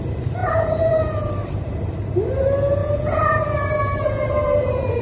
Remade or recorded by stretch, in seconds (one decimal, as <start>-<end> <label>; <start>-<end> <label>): 0.0-0.4 recorded; 0.4-1.3 remade; 1.3-2.8 recorded; 2.8-5.0 remade